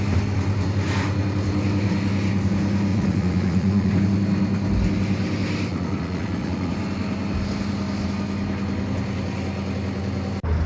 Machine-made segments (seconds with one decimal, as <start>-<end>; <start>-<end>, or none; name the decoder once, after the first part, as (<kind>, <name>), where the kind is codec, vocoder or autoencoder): 2.9-3.9 (vocoder, Vocos); 5.7-6.7